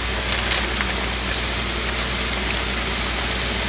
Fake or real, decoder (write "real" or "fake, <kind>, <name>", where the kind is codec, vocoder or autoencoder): real